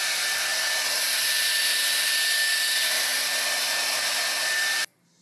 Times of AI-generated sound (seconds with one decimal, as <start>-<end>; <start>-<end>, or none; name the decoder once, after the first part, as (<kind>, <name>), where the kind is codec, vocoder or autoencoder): none